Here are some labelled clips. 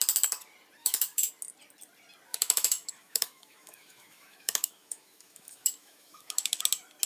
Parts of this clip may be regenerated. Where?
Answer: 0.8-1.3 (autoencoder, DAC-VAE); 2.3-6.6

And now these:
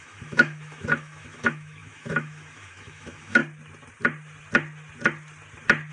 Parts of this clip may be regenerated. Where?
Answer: 0.0-3.4 (autoencoder, DAC-VAE)

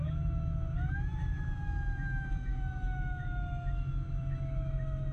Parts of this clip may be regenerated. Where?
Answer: 0.0-5.1 (autoencoder, DAC-VAE)